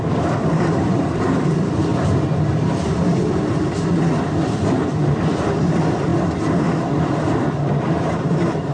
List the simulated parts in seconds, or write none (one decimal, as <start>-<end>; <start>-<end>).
0.0-1.9; 2.7-8.7